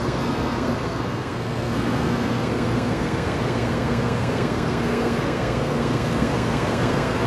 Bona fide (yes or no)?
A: no